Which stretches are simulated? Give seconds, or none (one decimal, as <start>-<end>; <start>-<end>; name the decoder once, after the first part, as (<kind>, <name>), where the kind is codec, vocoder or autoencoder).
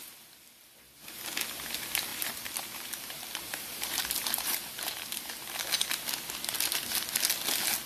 2.1-5.3 (vocoder, BigVGAN v2)